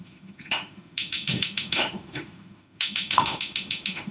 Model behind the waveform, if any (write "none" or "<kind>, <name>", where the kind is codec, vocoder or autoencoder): autoencoder, DAC-VAE